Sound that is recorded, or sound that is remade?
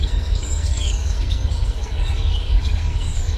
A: remade